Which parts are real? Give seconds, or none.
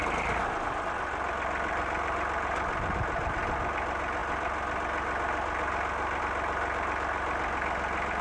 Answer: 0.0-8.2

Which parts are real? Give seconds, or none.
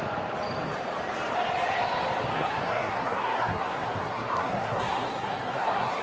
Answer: 0.0-2.3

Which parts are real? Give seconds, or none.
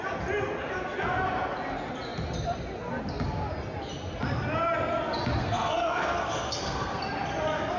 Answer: 0.0-5.4; 7.0-7.8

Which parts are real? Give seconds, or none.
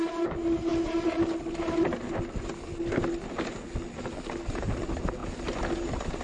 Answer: 0.0-6.2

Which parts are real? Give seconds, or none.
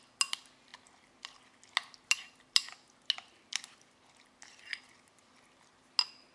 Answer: 0.0-6.3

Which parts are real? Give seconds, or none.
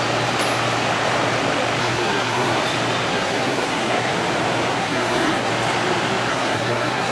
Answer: 0.0-1.8; 2.6-3.1; 4.1-4.7; 5.5-6.3